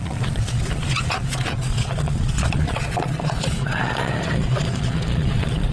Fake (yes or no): yes